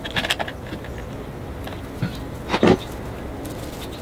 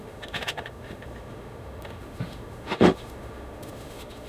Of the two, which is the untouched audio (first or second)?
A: first